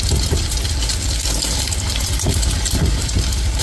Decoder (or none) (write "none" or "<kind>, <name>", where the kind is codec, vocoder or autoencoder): vocoder, BigVGAN v2